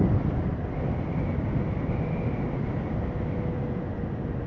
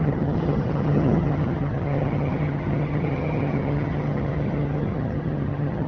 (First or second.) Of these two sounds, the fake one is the second